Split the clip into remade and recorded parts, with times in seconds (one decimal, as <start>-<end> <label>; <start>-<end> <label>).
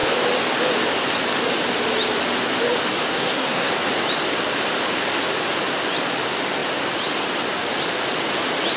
0.0-3.1 recorded; 3.1-3.7 remade; 3.7-8.8 recorded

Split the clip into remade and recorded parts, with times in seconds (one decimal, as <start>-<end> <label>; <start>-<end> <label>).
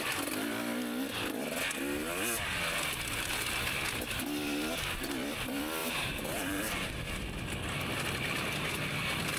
0.0-5.8 recorded; 5.8-7.0 remade; 7.0-9.4 recorded